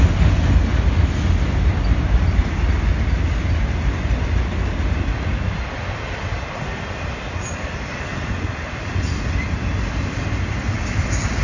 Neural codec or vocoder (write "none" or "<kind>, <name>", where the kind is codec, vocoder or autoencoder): none